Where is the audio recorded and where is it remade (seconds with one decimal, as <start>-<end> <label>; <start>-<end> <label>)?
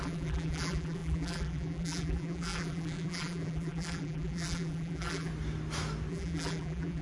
0.0-5.3 remade; 5.3-6.1 recorded; 6.1-7.0 remade